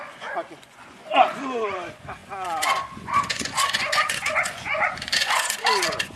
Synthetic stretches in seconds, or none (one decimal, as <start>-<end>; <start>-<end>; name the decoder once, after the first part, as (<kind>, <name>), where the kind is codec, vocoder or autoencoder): 0.0-6.2 (vocoder, Vocos)